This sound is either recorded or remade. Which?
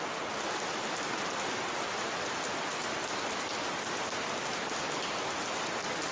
recorded